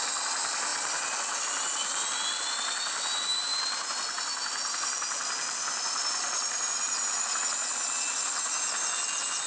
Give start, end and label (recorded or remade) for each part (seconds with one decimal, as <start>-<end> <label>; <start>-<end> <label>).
0.0-9.5 recorded